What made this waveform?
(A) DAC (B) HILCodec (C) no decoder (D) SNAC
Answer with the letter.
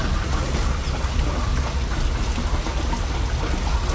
C